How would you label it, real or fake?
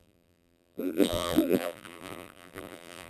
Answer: fake